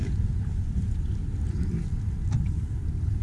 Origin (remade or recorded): recorded